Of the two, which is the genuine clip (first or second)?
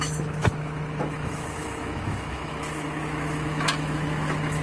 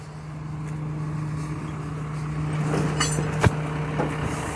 second